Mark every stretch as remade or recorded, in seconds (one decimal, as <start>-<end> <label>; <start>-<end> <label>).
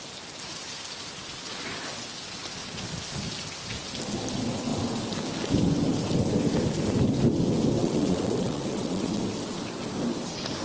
0.0-7.8 recorded; 7.8-9.2 remade; 9.2-10.6 recorded